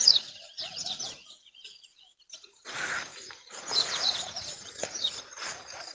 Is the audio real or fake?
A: fake